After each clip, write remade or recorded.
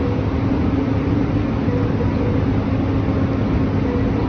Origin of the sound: recorded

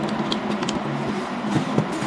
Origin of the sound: recorded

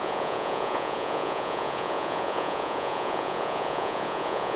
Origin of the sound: remade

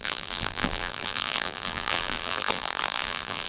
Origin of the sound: remade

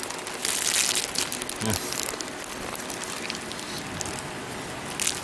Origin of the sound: recorded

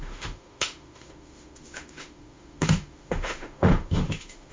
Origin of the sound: remade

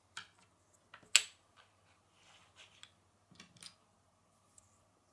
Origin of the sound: recorded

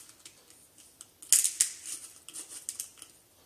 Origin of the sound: recorded